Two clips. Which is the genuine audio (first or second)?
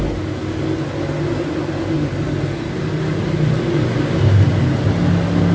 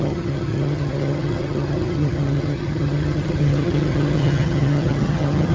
first